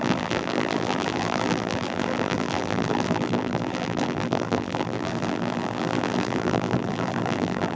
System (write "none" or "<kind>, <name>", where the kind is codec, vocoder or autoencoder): vocoder, BigVGAN v2